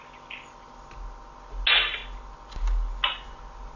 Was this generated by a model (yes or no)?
no